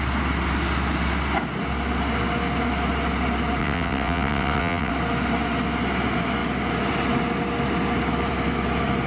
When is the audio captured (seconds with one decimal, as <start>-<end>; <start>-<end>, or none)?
0.0-3.6; 4.9-9.1